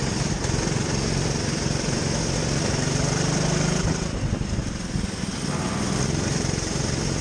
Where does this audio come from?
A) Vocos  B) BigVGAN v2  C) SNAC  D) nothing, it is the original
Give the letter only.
D